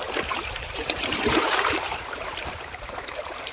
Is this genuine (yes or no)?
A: no